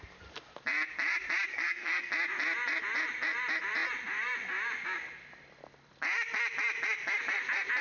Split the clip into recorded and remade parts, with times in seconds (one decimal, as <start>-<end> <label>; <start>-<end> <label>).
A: 0.0-1.5 recorded; 1.5-2.1 remade; 2.1-7.8 recorded